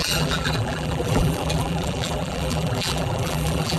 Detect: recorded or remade remade